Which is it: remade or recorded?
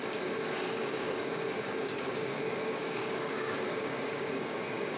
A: remade